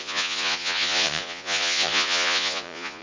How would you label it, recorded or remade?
remade